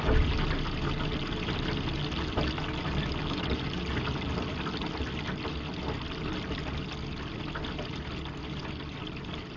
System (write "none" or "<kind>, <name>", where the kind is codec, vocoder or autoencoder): none